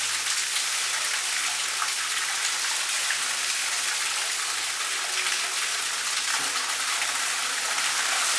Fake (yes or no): no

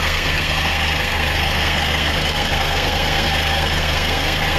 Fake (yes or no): yes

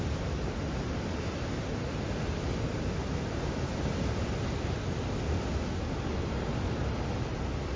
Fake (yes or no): no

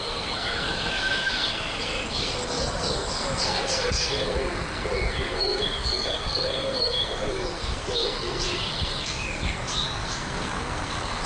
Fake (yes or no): yes